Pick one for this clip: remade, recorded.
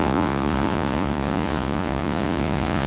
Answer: remade